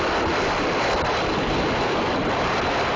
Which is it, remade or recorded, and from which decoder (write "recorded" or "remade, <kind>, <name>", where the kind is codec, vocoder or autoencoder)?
recorded